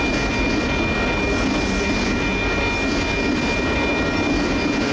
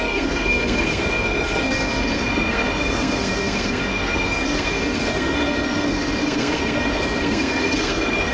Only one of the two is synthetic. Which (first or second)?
second